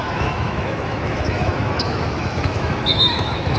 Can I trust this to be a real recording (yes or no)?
no